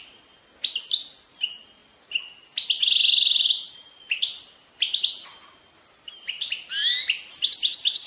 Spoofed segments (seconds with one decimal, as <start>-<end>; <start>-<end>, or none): none